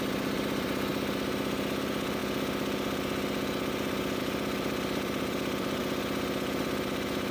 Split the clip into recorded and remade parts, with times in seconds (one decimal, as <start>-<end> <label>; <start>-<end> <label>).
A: 0.0-0.9 remade; 0.9-1.8 recorded; 1.8-2.2 remade; 2.2-4.2 recorded; 4.2-5.8 remade; 5.8-6.6 recorded; 6.6-7.3 remade